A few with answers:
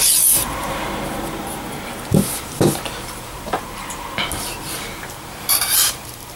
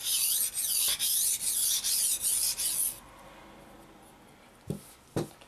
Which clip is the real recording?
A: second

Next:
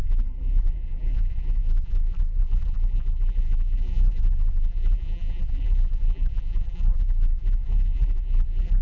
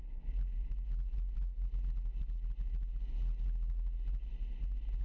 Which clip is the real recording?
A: second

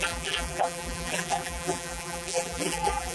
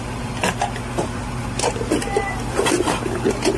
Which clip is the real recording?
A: second